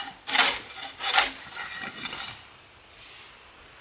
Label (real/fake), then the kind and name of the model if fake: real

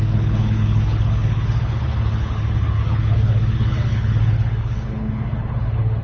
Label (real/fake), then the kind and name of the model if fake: fake, codec, HILCodec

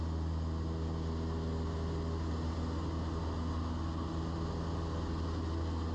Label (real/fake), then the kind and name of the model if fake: real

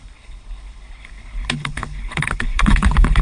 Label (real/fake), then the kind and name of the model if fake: fake, codec, HILCodec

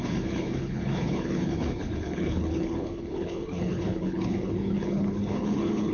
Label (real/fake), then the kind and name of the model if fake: fake, codec, HILCodec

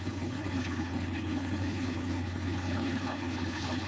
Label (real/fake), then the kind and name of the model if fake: fake, codec, HILCodec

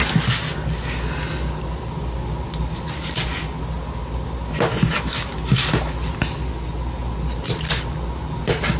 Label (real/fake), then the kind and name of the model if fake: real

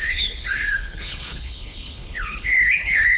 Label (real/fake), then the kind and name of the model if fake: fake, codec, HILCodec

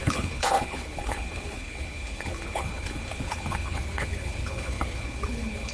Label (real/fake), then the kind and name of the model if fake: fake, codec, HILCodec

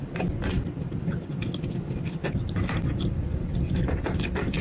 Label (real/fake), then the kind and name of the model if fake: real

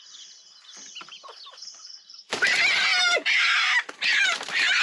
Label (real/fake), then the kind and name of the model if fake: real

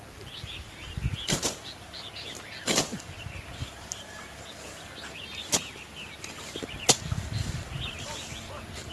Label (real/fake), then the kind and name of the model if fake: real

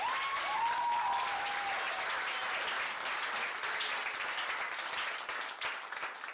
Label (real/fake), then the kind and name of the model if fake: real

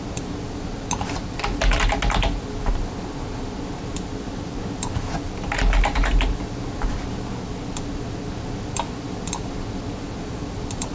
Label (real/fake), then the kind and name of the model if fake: real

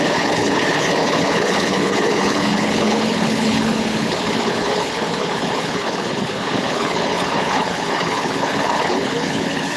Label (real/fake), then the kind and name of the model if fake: fake, codec, HILCodec